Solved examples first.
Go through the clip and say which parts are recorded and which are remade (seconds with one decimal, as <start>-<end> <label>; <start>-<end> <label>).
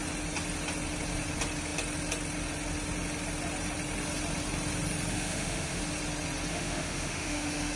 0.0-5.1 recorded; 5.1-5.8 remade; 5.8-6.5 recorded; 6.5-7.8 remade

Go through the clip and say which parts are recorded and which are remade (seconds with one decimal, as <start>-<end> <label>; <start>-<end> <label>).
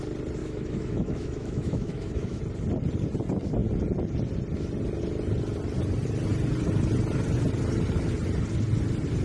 0.0-0.4 recorded; 0.4-2.4 remade; 2.4-9.2 recorded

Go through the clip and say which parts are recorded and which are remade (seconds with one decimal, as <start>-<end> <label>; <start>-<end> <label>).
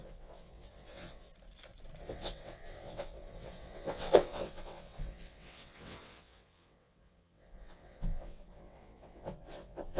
0.0-1.3 remade; 1.3-2.0 recorded; 2.0-10.0 remade